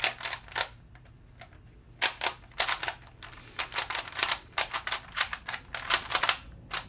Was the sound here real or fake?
real